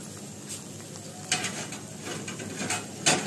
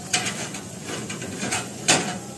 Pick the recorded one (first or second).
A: first